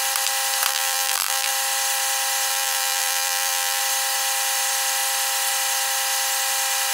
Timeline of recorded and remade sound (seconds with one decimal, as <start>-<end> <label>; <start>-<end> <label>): 0.0-0.7 recorded; 0.7-1.5 remade; 1.5-2.5 recorded; 2.5-3.8 remade; 3.8-6.9 recorded